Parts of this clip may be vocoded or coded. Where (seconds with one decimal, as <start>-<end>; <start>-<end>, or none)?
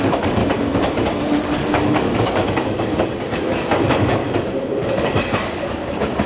0.0-0.4; 1.4-4.2; 4.9-6.3